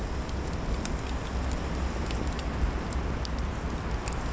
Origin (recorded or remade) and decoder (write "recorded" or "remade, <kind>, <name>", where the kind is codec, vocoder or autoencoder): recorded